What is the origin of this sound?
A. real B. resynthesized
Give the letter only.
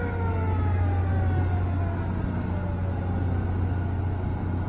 A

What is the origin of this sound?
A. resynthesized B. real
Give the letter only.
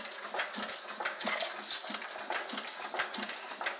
B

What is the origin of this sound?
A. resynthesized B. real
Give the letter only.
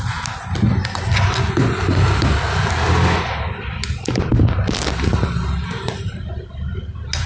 B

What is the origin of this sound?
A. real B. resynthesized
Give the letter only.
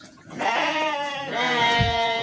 B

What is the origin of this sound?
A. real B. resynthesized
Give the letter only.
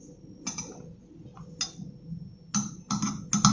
A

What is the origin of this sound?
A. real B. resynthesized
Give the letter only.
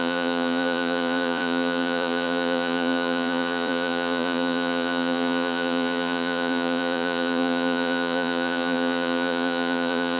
B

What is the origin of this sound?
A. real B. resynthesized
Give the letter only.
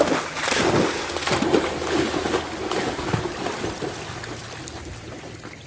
A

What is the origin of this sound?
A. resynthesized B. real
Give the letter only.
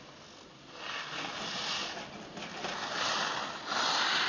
B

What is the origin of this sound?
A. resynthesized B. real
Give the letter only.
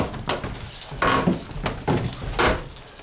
B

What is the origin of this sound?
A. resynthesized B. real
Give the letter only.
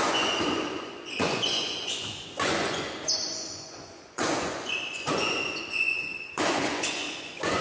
A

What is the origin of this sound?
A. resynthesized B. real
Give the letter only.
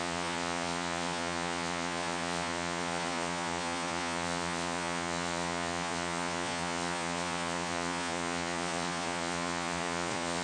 A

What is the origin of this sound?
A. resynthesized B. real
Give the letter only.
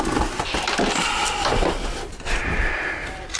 B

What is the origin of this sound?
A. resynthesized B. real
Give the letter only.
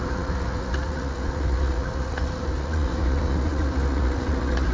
A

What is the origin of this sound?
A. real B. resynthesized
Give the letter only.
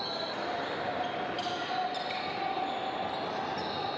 A